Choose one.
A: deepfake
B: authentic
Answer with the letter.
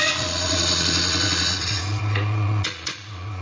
A